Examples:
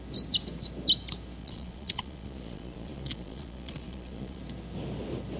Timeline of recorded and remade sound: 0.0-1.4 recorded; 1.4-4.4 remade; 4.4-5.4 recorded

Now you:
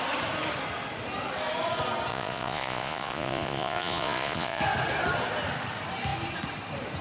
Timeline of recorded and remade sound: 0.0-2.1 recorded; 2.1-4.6 remade; 4.6-7.0 recorded

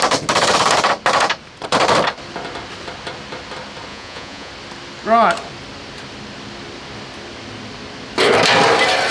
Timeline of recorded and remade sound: 0.0-3.9 recorded; 3.9-4.5 remade; 4.5-9.1 recorded

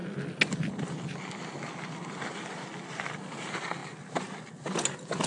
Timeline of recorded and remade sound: 0.0-5.3 recorded

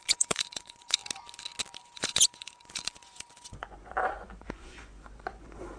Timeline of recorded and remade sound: 0.0-1.0 remade; 1.0-1.8 recorded; 1.8-5.8 remade